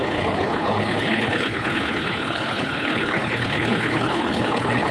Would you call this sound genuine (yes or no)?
no